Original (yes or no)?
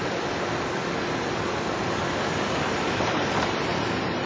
yes